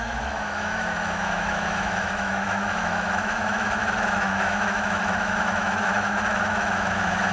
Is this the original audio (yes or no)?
no